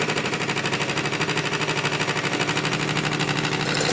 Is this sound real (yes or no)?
no